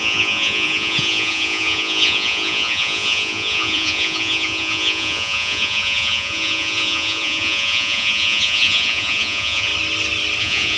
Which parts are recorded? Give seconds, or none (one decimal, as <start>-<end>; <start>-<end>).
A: 9.7-10.4